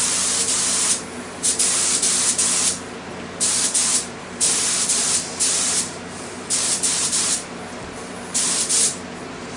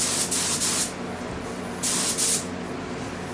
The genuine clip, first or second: second